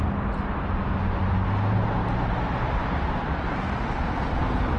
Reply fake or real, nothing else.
real